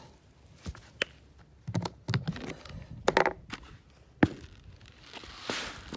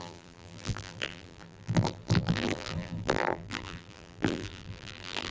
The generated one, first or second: second